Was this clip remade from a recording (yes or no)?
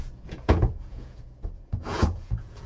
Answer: yes